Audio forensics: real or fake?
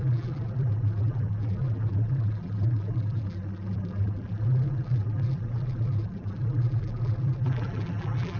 fake